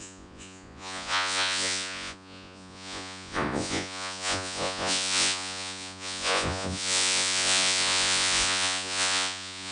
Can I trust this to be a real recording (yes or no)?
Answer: no